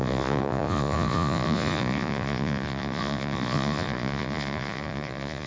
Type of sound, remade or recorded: remade